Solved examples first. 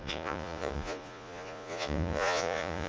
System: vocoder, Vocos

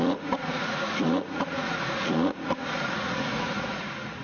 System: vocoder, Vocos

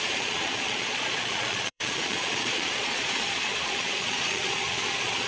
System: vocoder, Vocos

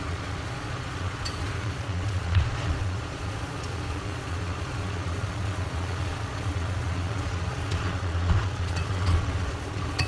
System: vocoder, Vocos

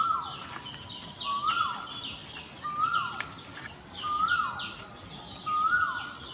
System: none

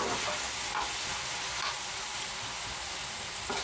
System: none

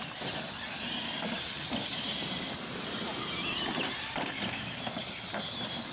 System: none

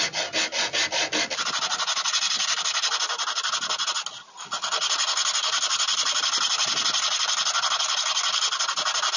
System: none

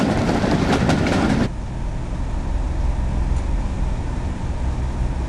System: none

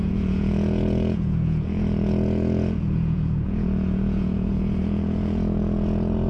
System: vocoder, Vocos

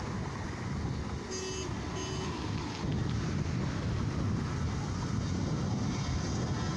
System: none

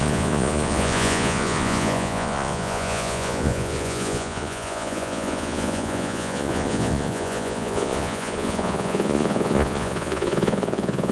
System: vocoder, Vocos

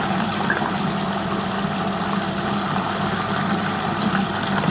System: none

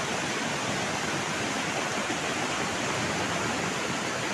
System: none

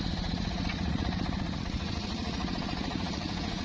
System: vocoder, Vocos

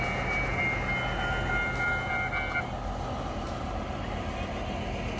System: none